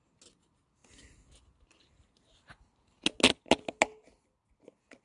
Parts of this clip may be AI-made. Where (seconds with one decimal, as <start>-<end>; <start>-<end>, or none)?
none